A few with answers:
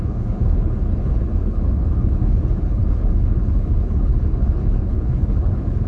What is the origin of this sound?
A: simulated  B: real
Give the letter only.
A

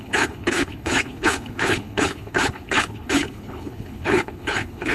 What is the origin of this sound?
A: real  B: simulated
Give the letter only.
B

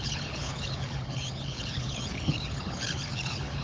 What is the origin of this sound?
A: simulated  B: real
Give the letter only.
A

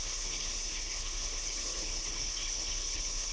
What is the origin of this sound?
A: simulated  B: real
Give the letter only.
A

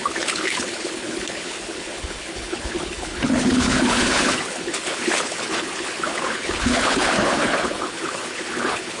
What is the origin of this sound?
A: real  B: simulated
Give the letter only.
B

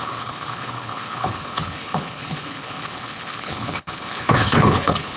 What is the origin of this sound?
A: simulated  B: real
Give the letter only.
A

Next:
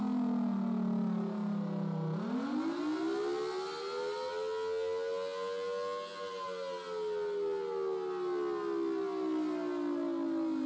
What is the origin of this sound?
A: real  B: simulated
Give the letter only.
A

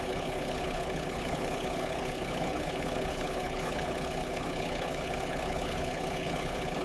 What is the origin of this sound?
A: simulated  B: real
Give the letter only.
A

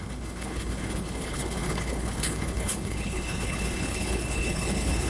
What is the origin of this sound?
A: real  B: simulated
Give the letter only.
B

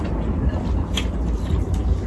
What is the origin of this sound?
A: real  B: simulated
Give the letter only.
A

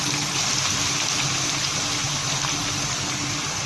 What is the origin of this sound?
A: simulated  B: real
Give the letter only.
B